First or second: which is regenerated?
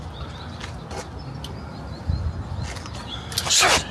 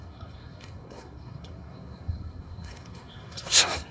second